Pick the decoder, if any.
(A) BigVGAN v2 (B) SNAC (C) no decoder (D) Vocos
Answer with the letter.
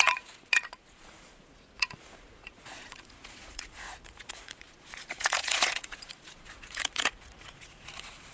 D